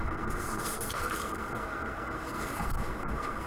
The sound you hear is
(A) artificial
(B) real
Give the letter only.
A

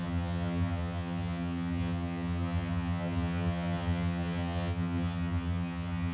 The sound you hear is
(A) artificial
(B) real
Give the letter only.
A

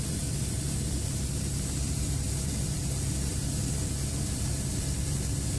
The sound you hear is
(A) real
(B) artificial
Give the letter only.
B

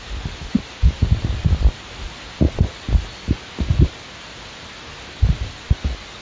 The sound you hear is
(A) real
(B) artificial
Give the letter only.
A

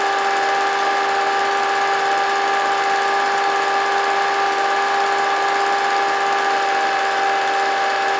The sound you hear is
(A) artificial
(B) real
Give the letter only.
B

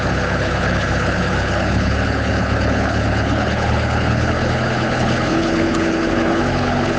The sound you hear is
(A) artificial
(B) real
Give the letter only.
A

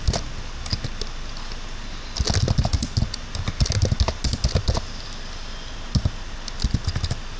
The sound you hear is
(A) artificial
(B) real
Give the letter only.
B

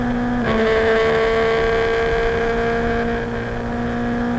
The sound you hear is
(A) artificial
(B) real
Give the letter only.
B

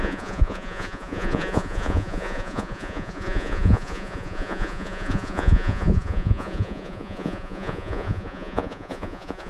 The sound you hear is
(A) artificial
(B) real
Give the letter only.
A